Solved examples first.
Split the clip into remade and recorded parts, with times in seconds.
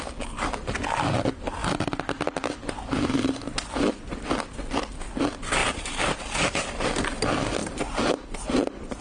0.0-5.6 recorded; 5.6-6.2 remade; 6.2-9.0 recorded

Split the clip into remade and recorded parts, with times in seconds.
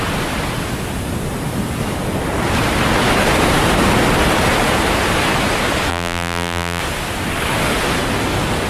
0.0-5.9 recorded; 5.9-6.8 remade; 6.8-8.7 recorded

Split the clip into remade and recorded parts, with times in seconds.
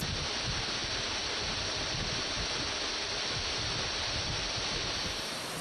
0.0-5.6 recorded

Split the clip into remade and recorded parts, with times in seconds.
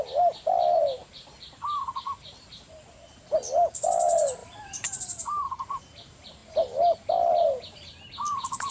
0.0-4.4 recorded; 4.4-5.8 remade; 5.8-8.7 recorded